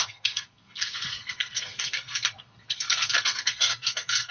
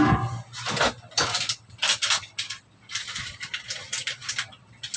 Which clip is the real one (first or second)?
second